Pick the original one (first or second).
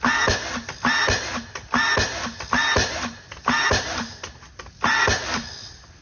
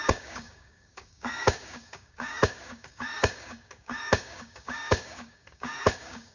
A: first